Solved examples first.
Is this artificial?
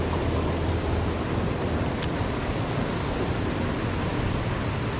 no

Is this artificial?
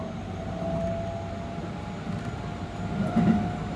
no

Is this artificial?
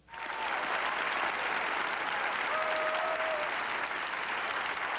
no